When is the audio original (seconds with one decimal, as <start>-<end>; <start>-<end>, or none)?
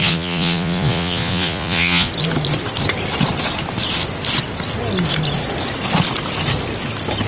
2.1-7.3